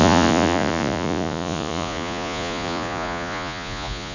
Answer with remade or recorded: remade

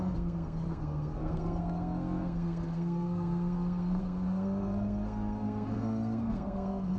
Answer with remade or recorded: remade